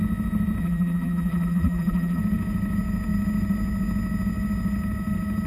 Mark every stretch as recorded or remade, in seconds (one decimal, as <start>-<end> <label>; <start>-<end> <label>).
0.0-0.6 recorded; 0.6-2.2 remade; 2.2-5.5 recorded